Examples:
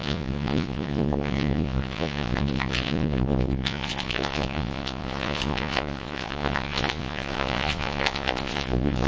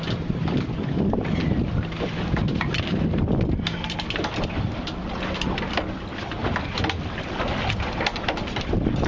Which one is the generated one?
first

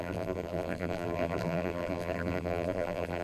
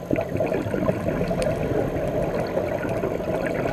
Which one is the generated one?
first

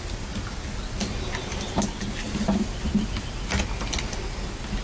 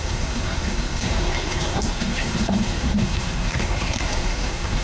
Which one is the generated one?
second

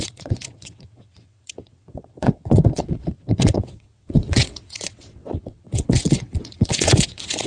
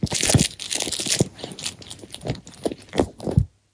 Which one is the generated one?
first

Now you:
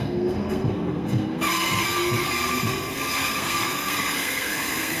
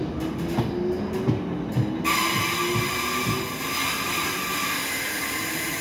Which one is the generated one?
first